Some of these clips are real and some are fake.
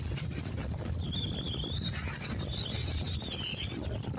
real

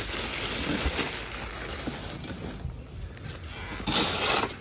real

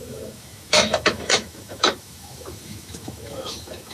fake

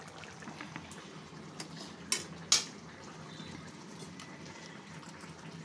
real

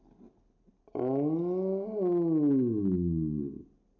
real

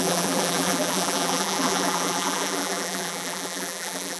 fake